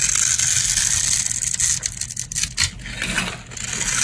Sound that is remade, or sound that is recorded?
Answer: recorded